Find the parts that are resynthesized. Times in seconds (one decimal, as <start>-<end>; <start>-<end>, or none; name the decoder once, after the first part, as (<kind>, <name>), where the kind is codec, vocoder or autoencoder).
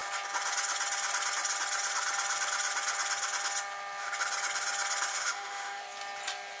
5.1-5.8 (autoencoder, DAC-VAE)